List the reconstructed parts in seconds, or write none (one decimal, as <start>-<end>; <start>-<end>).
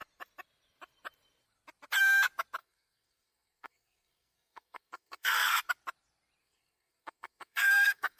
2.6-5.7; 6.4-8.2